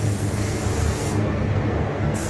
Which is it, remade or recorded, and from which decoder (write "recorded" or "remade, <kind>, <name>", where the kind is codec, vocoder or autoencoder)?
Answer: remade, codec, SNAC